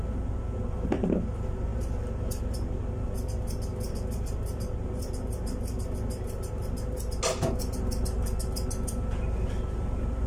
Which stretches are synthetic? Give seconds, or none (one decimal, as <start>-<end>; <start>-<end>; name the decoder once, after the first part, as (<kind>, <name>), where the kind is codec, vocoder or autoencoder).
none